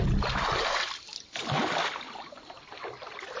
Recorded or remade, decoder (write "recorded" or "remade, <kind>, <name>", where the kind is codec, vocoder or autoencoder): recorded